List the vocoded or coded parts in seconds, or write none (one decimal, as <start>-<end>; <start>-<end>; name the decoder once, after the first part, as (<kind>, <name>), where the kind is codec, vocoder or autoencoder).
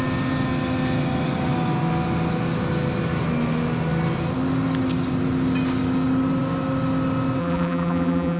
7.4-8.4 (vocoder, BigVGAN v2)